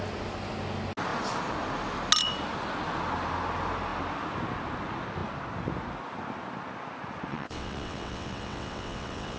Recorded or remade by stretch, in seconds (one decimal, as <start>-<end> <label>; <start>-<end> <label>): 0.0-7.3 recorded; 7.3-9.4 remade

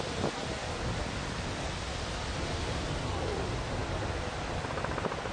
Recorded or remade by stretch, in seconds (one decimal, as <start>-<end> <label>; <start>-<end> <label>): 0.0-5.3 recorded

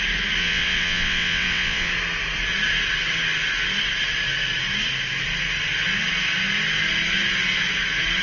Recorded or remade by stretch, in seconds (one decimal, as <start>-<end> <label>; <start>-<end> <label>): 0.0-0.4 recorded; 0.4-1.9 remade; 1.9-8.2 recorded